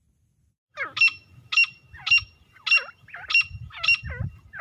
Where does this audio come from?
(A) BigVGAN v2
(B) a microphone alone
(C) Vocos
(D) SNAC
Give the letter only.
B